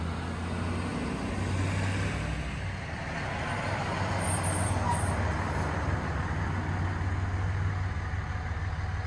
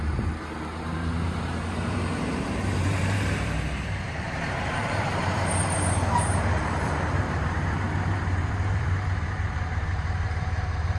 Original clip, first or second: first